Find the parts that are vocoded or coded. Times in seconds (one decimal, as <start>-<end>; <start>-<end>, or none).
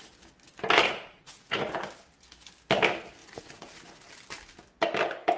0.8-1.7; 3.2-4.1